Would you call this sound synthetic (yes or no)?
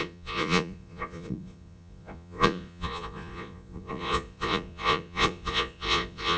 yes